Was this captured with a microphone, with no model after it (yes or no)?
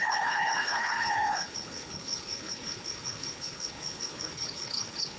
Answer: no